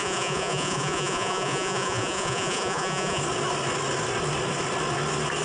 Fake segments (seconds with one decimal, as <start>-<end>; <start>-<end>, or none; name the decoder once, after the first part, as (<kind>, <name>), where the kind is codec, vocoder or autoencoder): 0.0-3.2 (vocoder, Vocos)